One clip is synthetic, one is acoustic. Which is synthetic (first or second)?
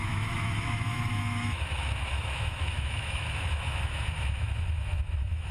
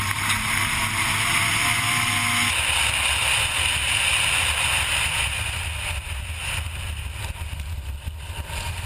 first